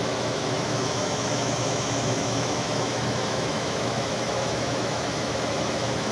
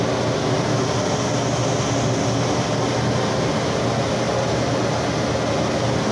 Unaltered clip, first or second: second